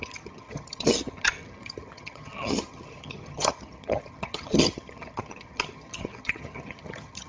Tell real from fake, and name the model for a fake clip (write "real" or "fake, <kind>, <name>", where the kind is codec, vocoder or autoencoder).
fake, vocoder, HiFi-GAN